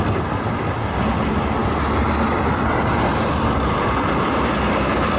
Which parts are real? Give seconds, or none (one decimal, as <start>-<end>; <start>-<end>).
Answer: 0.0-5.2